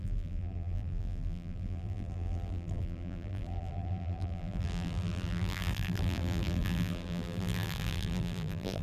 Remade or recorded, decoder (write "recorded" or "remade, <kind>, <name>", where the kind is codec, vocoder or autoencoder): remade, vocoder, BigVGAN v2